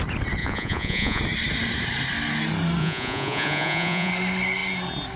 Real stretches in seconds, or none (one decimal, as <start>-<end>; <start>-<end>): 0.0-0.4; 1.2-2.8; 4.1-5.2